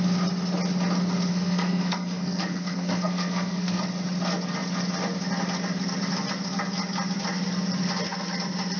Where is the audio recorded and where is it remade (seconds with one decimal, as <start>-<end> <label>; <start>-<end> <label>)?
0.0-1.3 recorded; 1.3-3.8 remade; 3.8-8.8 recorded